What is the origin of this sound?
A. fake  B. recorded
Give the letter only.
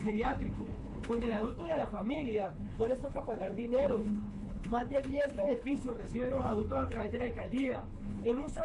A